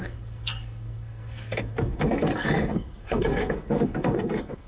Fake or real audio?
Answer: fake